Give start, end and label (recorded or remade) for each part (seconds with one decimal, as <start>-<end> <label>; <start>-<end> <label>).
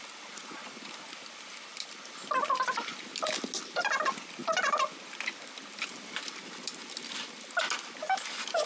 0.0-1.7 recorded; 1.7-3.1 remade; 3.1-8.7 recorded